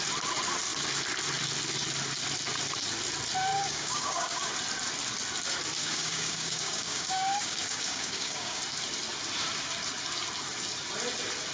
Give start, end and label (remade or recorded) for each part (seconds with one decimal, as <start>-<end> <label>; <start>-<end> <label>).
0.0-3.5 recorded; 3.5-4.5 remade; 4.5-5.8 recorded; 5.8-8.6 remade; 8.6-11.5 recorded